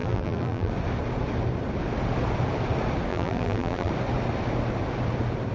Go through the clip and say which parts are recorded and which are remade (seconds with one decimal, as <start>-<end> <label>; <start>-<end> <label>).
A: 0.0-0.7 remade; 0.7-3.1 recorded; 3.1-3.9 remade; 3.9-5.5 recorded